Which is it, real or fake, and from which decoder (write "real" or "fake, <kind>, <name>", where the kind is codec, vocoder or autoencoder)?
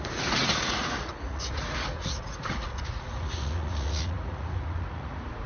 fake, vocoder, Vocos